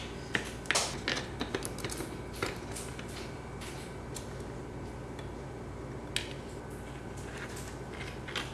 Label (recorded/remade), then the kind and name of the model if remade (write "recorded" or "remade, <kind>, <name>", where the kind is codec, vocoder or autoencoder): recorded